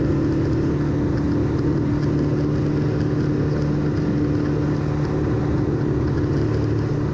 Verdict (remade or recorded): recorded